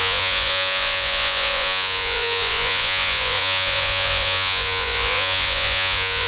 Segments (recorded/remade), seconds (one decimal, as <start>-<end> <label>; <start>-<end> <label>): 0.0-6.3 remade

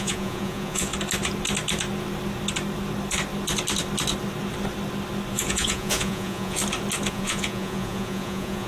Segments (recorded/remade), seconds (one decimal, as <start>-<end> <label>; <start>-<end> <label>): 0.0-0.9 remade; 0.9-5.3 recorded; 5.3-6.6 remade; 6.6-7.1 recorded; 7.1-8.7 remade

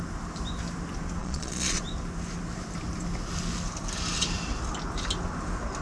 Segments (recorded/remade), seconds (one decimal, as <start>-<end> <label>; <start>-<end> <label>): 0.0-1.2 recorded; 1.2-1.8 remade; 1.8-5.8 recorded

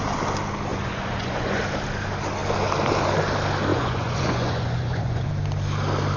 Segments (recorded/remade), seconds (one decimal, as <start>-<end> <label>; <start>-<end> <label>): 0.0-0.7 recorded; 0.7-1.6 remade; 1.6-3.7 recorded; 3.7-5.3 remade; 5.3-6.2 recorded